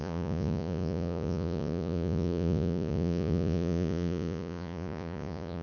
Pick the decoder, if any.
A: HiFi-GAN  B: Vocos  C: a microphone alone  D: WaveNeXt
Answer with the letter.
B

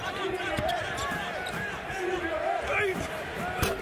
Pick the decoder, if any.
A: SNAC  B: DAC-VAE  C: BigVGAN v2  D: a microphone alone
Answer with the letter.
D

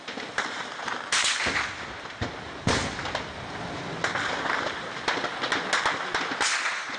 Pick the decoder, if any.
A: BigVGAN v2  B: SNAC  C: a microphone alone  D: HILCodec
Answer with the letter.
C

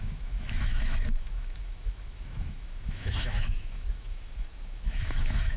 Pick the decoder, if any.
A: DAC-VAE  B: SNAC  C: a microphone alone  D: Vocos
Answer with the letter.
A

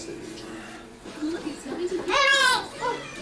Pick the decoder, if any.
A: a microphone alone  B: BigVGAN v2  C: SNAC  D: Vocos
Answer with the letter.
D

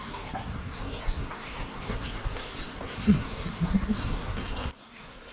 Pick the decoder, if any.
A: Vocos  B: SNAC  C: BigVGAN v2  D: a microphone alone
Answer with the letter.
B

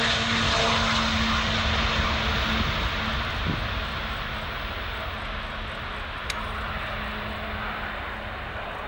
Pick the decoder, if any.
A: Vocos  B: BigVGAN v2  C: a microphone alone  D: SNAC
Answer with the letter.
C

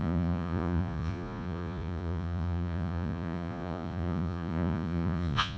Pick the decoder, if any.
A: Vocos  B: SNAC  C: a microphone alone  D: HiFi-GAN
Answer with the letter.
A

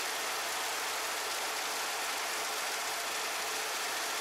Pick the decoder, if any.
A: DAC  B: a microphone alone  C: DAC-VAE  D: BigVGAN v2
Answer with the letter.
B